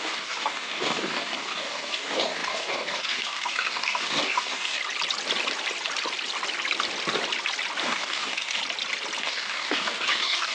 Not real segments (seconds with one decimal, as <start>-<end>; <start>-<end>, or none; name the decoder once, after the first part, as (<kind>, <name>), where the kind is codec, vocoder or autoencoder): 0.0-4.8 (codec, DAC); 7.8-8.6; 9.2-10.5